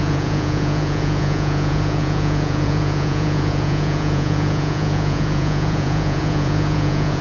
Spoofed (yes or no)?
yes